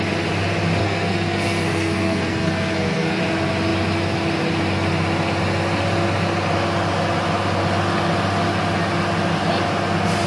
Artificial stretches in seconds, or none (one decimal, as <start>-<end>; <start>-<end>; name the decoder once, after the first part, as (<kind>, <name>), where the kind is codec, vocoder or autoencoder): 0.8-3.2 (codec, SNAC)